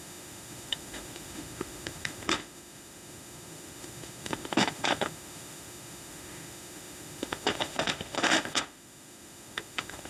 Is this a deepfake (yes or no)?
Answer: yes